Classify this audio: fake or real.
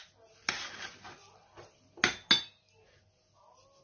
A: real